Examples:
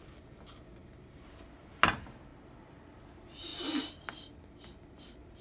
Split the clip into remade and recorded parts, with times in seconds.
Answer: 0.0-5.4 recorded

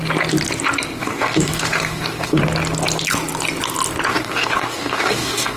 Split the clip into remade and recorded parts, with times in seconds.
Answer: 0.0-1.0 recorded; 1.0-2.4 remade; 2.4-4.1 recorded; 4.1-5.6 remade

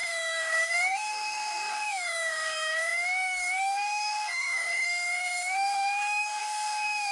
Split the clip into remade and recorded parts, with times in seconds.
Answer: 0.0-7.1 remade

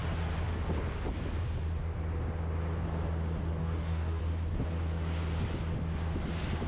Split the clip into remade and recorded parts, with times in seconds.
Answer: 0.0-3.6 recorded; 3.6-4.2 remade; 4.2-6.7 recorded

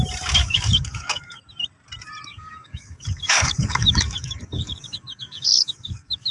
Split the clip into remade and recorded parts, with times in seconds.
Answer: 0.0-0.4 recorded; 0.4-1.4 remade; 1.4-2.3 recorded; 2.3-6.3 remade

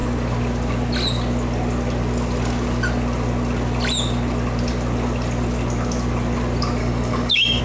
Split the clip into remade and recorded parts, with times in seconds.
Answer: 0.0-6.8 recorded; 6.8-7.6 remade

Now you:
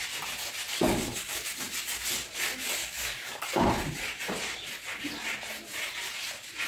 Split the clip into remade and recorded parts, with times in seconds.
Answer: 0.0-0.7 recorded; 0.7-1.5 remade; 1.5-2.8 recorded; 2.8-3.5 remade; 3.5-6.7 recorded

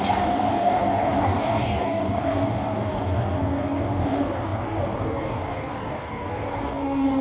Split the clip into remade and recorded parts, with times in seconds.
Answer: 0.0-7.2 remade